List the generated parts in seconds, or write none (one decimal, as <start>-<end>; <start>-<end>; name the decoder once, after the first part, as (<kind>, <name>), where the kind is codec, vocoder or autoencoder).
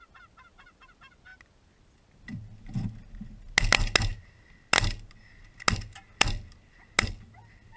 none